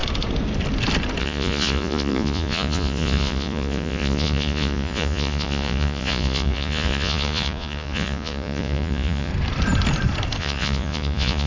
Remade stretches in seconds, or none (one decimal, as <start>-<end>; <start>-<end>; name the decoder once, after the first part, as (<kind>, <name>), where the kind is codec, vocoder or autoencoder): 1.2-9.3 (vocoder, Vocos); 10.4-11.5